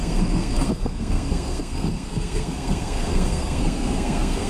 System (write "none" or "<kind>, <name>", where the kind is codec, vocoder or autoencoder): codec, SNAC